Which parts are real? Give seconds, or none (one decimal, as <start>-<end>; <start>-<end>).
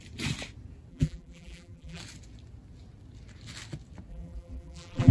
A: 0.0-0.9; 2.0-4.1